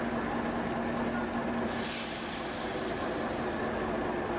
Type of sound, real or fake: real